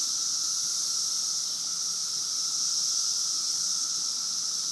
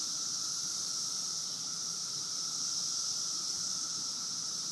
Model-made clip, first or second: second